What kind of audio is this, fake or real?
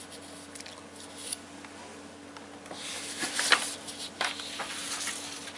real